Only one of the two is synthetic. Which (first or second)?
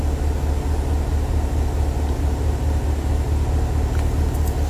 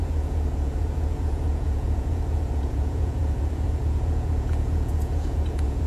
second